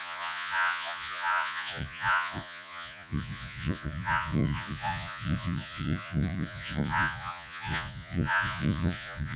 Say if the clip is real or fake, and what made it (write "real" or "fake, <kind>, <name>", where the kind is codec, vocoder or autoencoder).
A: fake, vocoder, Vocos